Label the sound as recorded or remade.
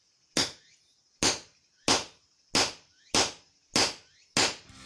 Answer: recorded